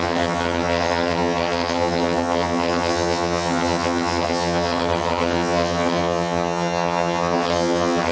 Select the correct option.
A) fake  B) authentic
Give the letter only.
A